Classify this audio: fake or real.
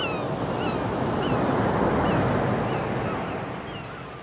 real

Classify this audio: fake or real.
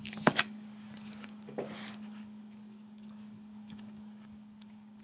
fake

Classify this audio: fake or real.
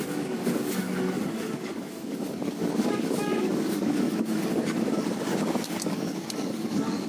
fake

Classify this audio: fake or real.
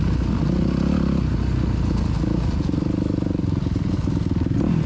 real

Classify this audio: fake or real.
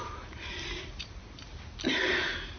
real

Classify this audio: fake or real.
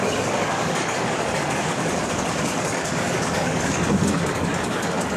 fake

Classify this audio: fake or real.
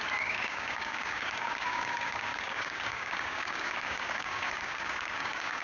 fake